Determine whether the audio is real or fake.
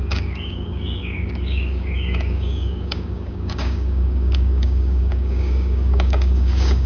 fake